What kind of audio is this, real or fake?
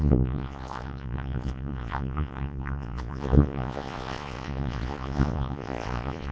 fake